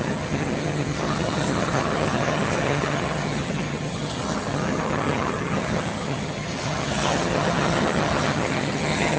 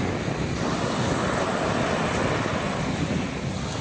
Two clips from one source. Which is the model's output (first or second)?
first